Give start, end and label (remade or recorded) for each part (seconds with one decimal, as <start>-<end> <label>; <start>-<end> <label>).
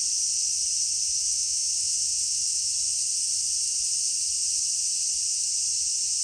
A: 0.0-1.2 recorded; 1.2-2.7 remade; 2.7-6.2 recorded